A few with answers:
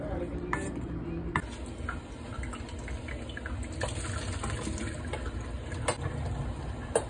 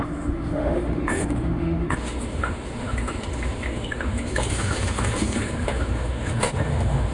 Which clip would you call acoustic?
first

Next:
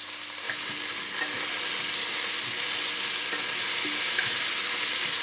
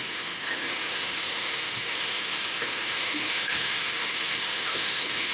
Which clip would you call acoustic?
first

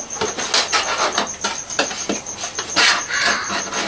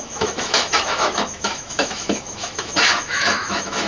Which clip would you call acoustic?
first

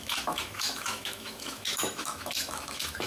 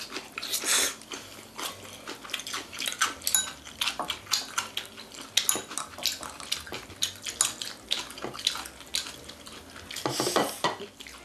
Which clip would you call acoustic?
second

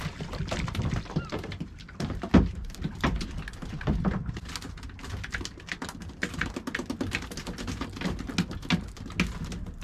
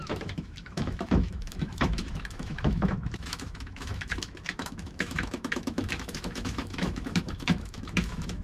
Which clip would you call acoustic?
first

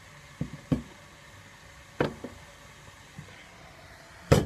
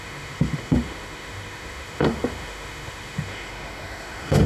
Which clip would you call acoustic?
first